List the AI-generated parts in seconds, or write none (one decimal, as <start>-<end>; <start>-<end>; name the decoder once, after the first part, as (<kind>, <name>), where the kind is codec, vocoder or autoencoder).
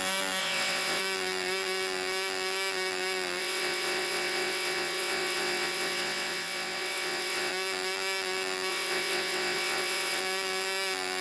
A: 0.4-1.0 (vocoder, WaveNeXt); 3.4-7.5; 8.7-10.2